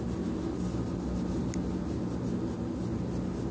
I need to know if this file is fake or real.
real